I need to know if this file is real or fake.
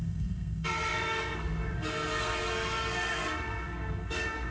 fake